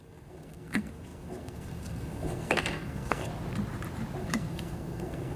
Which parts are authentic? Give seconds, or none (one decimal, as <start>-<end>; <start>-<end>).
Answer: 3.3-4.2